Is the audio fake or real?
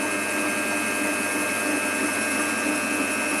real